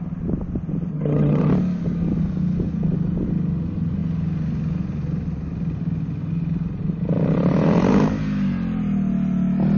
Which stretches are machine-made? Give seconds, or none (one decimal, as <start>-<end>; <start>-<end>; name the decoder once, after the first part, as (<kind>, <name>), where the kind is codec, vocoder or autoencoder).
0.9-1.5 (vocoder, HiFi-GAN)